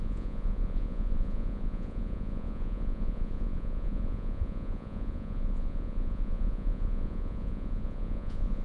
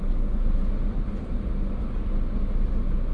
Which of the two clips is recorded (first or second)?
second